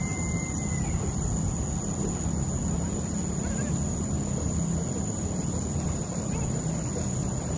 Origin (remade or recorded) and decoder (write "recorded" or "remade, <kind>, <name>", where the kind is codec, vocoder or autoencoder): recorded